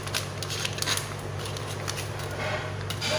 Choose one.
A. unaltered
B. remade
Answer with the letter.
A